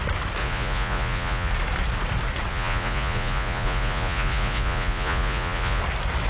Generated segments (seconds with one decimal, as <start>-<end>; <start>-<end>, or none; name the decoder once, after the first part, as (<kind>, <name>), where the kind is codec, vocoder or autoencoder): 0.4-1.5 (vocoder, Vocos); 2.5-5.8